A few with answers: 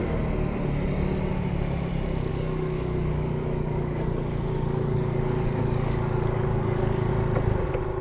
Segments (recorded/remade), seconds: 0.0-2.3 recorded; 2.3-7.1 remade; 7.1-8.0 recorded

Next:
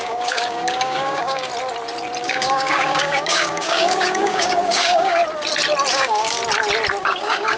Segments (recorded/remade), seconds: 0.0-1.5 remade; 1.5-2.2 recorded; 2.2-5.2 remade; 5.2-5.9 recorded; 5.9-6.4 remade; 6.4-7.0 recorded; 7.0-7.6 remade

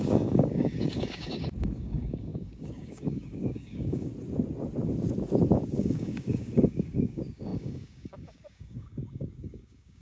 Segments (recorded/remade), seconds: 0.0-4.1 remade; 4.1-5.7 recorded; 5.7-10.0 remade

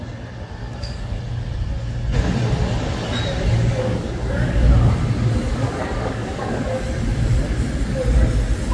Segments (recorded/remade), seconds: 0.0-0.6 recorded; 0.6-1.2 remade; 1.2-3.5 recorded; 3.5-5.0 remade; 5.0-5.5 recorded; 5.5-6.6 remade; 6.6-8.7 recorded

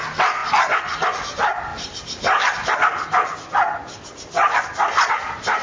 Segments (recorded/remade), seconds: 0.0-5.6 recorded